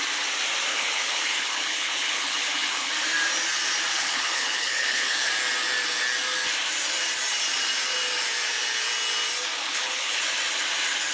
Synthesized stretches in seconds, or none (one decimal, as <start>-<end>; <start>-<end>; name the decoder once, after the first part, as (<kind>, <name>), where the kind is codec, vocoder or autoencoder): 0.7-2.9 (codec, HILCodec); 3.9-5.3; 9.6-10.2